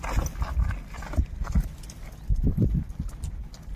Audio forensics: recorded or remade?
recorded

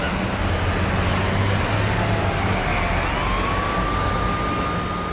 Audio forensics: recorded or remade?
recorded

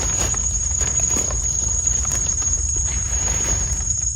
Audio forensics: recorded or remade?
remade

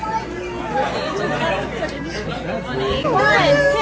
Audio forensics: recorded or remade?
recorded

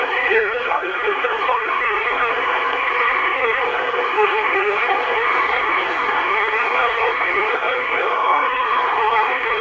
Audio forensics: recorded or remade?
remade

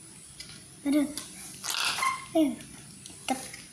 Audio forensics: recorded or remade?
recorded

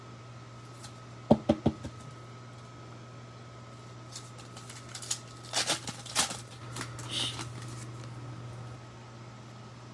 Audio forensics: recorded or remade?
recorded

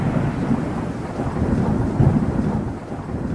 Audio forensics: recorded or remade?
remade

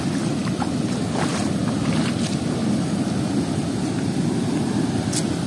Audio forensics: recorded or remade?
remade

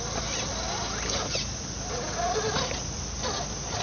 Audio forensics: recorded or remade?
recorded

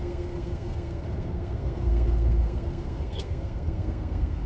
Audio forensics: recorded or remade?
remade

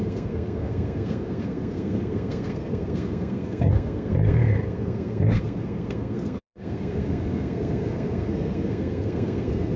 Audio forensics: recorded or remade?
remade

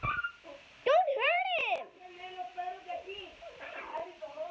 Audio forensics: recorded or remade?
remade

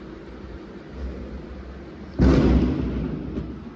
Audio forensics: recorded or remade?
recorded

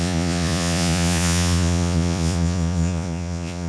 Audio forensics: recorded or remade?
remade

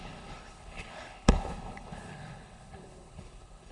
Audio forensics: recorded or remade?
remade